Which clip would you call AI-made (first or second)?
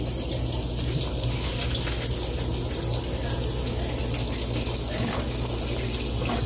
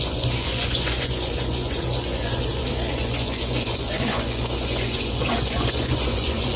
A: second